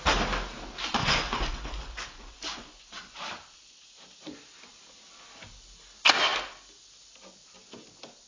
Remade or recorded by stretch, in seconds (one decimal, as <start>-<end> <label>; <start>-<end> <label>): 0.0-1.0 recorded; 1.0-3.2 remade; 3.2-8.3 recorded